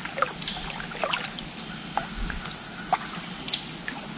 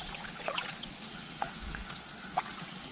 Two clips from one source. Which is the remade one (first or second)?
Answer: second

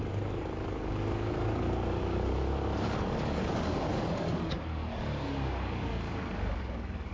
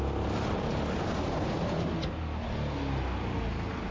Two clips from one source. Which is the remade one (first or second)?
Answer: first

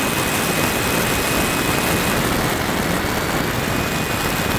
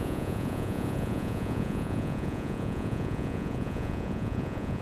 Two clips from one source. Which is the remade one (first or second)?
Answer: second